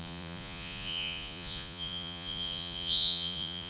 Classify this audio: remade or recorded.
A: remade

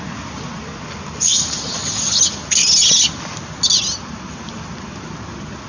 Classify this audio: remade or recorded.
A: recorded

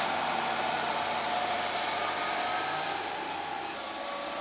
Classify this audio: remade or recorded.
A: recorded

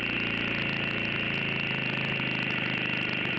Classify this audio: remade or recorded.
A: recorded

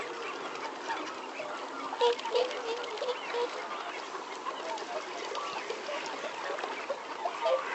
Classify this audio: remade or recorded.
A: recorded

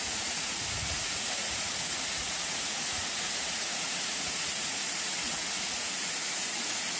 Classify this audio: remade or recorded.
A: remade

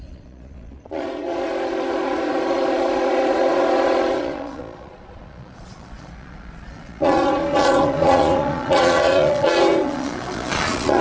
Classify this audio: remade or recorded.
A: remade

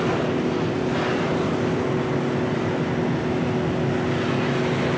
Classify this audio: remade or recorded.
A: recorded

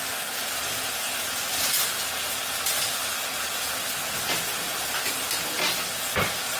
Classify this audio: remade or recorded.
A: recorded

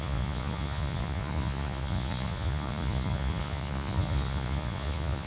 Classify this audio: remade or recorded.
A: remade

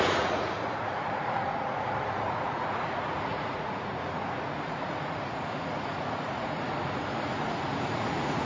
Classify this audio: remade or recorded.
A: remade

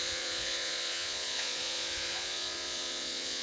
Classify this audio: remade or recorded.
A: remade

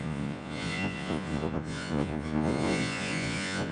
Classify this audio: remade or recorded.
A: remade